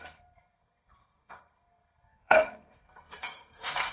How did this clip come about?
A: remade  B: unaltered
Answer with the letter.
A